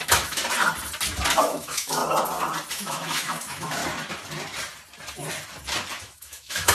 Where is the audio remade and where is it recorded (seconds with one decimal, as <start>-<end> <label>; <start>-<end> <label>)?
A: 0.0-0.4 remade; 0.4-1.4 recorded; 1.4-2.0 remade; 2.0-2.7 recorded; 2.7-3.8 remade; 3.8-6.0 recorded; 6.0-6.7 remade